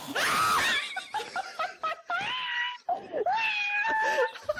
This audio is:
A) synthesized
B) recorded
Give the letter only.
B